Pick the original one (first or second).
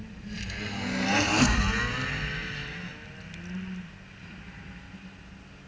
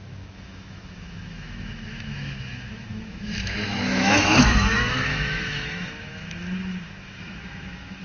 first